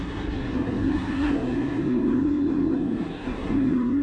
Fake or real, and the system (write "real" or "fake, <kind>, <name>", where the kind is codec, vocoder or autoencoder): fake, codec, SNAC